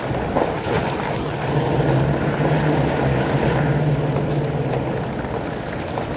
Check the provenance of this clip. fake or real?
real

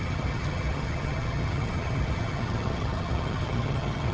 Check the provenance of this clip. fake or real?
fake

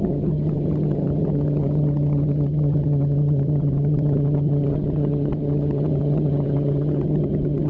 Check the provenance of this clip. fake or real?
fake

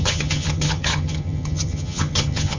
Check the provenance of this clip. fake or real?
fake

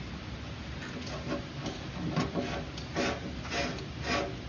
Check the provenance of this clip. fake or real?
real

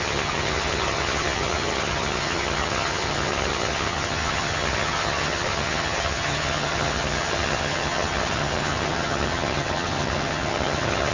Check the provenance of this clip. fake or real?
fake